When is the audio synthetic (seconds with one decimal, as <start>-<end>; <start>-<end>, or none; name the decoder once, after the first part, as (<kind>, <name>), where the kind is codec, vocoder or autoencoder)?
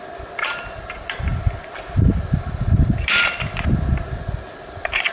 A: none